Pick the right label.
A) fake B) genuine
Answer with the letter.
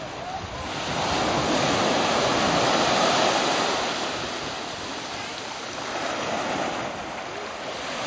B